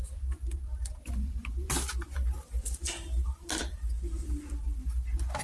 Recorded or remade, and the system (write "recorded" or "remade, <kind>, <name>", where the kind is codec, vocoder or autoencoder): recorded